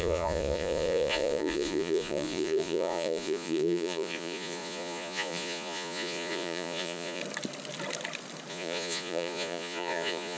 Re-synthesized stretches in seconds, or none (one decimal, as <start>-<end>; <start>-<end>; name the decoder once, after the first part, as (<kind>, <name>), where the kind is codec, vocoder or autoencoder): 0.0-7.2 (vocoder, Vocos); 8.5-10.4